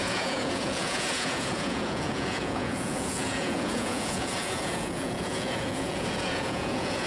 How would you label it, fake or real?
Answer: fake